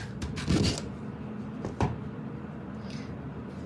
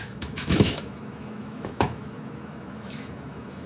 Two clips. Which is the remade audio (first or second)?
second